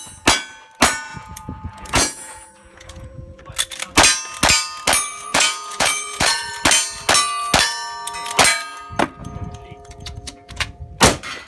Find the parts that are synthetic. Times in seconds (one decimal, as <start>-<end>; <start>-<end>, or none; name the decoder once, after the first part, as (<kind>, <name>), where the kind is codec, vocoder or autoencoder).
1.1-3.4 (vocoder, Vocos); 5.1-6.5; 9.2-10.8